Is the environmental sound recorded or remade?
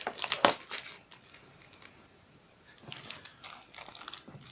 recorded